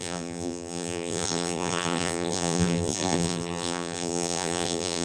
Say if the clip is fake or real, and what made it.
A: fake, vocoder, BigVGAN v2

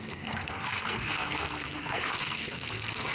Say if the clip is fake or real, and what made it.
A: fake, codec, SNAC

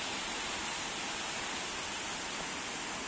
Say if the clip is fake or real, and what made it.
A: real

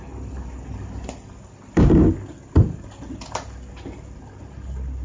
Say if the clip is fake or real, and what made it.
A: real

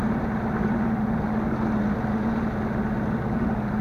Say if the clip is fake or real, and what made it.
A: real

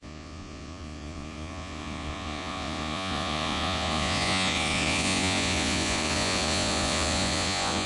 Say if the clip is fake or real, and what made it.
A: fake, vocoder, Vocos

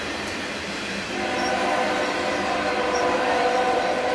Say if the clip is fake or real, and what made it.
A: fake, vocoder, BigVGAN v2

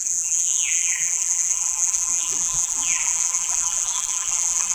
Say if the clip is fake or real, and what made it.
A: fake, vocoder, BigVGAN v2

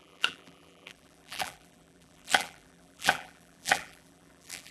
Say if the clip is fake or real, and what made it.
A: fake, vocoder, BigVGAN v2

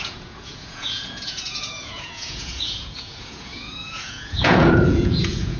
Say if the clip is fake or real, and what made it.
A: fake, vocoder, Vocos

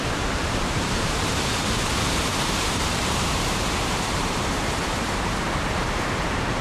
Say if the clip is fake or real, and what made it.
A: fake, vocoder, BigVGAN v2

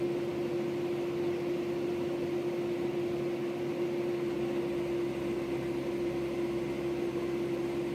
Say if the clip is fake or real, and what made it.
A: real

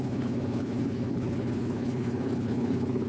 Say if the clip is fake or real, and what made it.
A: fake, codec, HILCodec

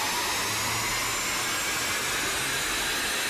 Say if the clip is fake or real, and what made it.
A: real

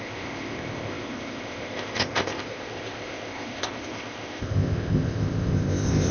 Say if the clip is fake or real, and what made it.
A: fake, codec, ZipCodec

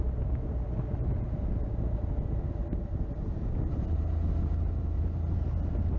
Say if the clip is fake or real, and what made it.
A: real